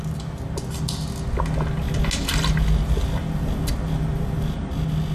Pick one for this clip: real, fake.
real